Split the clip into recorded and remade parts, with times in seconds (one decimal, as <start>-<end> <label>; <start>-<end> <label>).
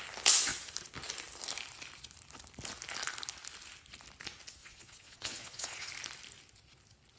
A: 0.0-4.6 recorded; 4.6-5.9 remade; 5.9-7.2 recorded